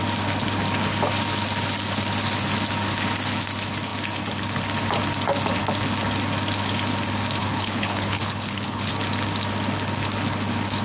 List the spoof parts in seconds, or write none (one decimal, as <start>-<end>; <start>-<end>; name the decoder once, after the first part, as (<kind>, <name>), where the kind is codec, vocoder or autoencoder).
7.4-8.9 (codec, HILCodec)